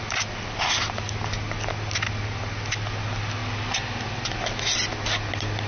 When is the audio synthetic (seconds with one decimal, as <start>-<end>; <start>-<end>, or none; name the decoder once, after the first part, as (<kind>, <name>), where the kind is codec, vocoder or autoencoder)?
none